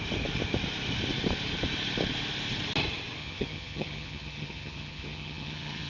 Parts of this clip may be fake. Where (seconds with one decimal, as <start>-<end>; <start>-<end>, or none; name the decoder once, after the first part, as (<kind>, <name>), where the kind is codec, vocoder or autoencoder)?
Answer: 3.2-5.9 (vocoder, HiFi-GAN)